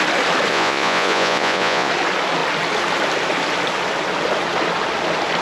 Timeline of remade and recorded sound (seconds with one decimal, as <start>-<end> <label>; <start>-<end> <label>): 0.0-0.5 recorded; 0.5-1.9 remade; 1.9-5.4 recorded